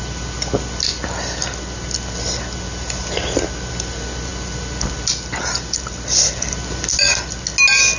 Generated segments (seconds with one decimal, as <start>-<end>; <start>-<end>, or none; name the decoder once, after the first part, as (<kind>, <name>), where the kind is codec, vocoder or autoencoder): none